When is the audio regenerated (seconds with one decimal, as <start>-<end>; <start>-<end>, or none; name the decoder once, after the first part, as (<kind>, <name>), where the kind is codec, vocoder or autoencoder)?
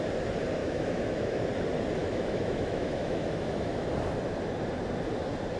0.6-1.4 (autoencoder, DAC-VAE); 2.0-3.9